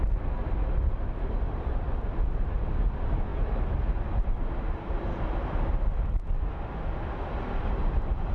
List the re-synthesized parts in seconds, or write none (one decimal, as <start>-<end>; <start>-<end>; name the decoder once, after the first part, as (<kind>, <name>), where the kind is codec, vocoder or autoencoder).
none